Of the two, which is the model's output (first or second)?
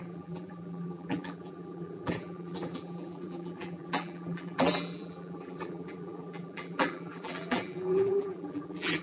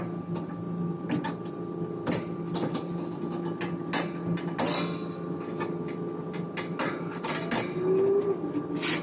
first